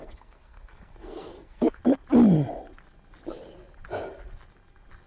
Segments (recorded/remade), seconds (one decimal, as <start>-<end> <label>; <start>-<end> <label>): 0.0-1.8 remade; 1.8-5.1 recorded